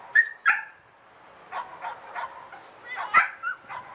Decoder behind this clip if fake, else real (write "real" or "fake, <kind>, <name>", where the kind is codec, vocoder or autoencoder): real